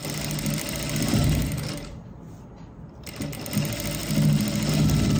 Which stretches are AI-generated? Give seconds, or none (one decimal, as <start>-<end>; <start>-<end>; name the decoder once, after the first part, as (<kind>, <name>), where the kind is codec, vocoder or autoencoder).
none